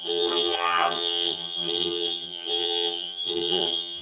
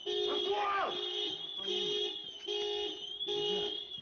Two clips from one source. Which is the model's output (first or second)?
first